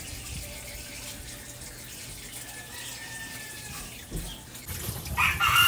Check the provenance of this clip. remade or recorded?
recorded